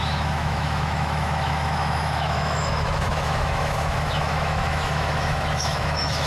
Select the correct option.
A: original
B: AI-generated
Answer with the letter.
B